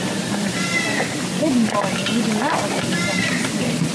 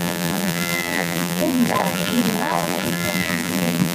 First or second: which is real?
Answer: first